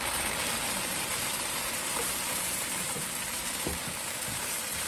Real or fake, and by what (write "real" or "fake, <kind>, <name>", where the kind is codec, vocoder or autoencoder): fake, vocoder, BigVGAN v2